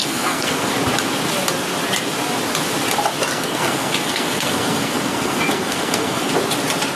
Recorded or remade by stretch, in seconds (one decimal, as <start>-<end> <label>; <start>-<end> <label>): 0.0-0.7 remade; 0.7-3.3 recorded; 3.3-6.3 remade; 6.3-7.0 recorded